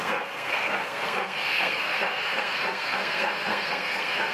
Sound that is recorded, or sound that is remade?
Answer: remade